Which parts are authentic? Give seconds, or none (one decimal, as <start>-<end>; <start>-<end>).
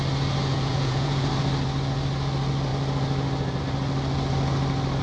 0.0-0.5; 1.3-5.0